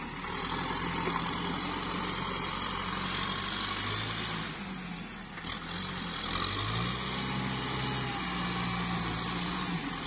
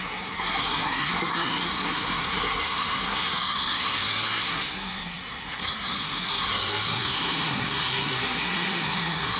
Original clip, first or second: first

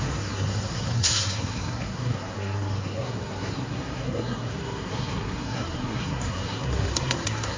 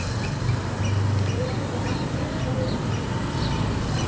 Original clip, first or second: second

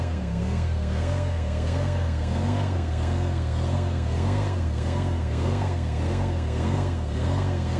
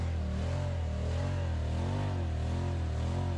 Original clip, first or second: second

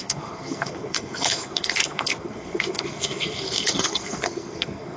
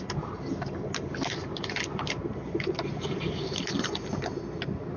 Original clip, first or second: second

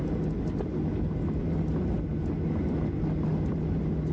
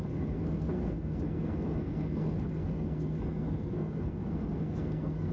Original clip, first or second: first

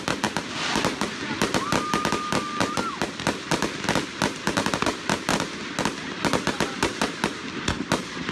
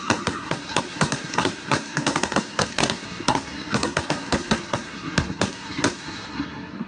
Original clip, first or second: first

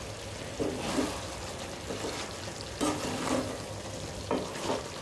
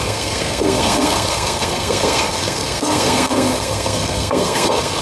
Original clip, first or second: first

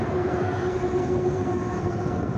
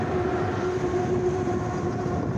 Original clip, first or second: second